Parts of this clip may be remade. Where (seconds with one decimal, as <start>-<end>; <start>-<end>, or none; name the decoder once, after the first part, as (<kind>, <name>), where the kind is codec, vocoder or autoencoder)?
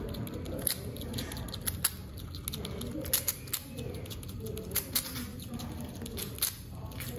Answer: none